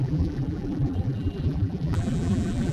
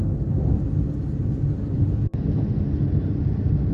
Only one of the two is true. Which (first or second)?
second